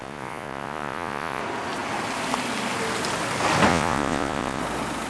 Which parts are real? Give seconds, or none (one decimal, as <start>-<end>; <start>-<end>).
1.4-3.7; 4.6-5.1